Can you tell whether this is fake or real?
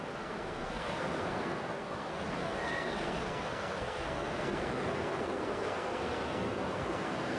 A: fake